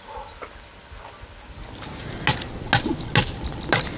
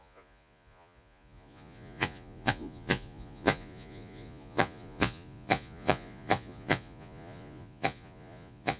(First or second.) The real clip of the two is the first